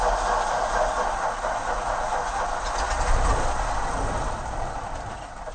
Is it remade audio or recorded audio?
recorded